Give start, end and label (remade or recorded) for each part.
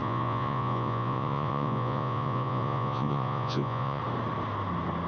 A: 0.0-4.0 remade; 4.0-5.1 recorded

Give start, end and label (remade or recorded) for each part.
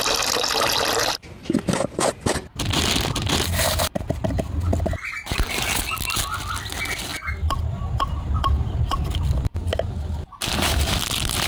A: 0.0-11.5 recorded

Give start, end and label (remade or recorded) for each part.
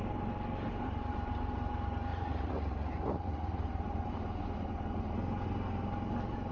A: 0.0-2.1 recorded; 2.1-3.6 remade; 3.6-6.5 recorded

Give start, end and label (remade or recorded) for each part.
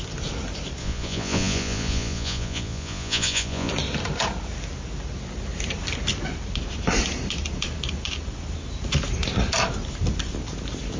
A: 0.0-0.8 recorded; 0.8-3.7 remade; 3.7-11.0 recorded